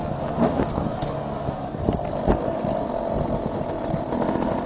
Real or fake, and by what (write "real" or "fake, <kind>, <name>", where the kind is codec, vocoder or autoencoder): real